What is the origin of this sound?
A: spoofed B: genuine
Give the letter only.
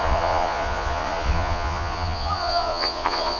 A